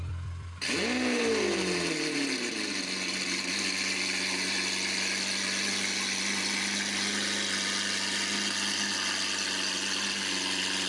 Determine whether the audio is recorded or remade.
recorded